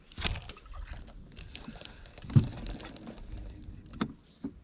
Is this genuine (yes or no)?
yes